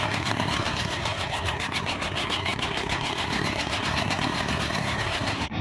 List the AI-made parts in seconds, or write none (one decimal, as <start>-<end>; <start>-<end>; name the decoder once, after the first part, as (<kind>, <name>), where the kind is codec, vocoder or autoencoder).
0.0-5.6 (codec, SNAC)